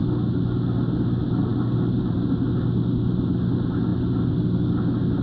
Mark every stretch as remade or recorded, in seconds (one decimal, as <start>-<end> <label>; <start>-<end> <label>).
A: 0.0-5.2 recorded